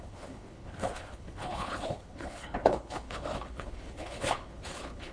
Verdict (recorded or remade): remade